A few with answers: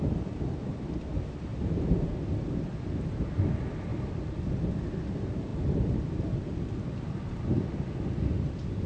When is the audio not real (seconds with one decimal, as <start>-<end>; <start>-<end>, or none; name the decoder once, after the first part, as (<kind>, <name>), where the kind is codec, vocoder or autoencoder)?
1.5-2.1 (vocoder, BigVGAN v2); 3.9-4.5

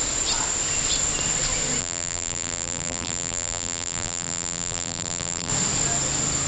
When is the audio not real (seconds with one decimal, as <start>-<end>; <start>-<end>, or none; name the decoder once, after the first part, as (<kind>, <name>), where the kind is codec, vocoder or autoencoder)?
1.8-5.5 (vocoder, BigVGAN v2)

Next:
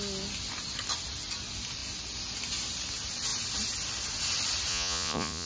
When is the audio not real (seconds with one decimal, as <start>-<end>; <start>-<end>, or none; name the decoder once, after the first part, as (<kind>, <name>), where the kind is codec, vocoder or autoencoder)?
4.7-5.5 (vocoder, Vocos)